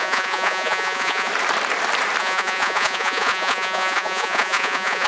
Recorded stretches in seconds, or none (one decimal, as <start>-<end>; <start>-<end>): 1.3-2.2